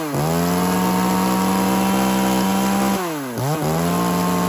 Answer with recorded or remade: recorded